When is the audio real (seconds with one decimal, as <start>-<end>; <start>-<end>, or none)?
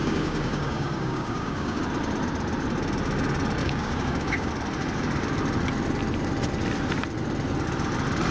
1.8-3.6; 4.5-8.3